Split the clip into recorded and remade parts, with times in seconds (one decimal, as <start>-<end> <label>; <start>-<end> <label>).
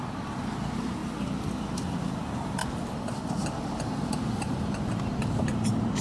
0.0-1.0 remade; 1.0-2.1 recorded; 2.1-2.6 remade; 2.6-5.3 recorded; 5.3-6.0 remade